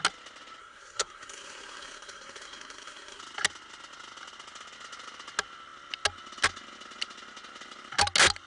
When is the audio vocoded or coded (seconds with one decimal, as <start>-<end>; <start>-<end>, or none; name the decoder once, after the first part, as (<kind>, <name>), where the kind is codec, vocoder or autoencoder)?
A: 0.6-3.2 (codec, SNAC)